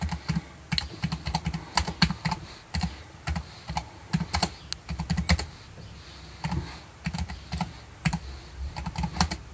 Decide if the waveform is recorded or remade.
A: recorded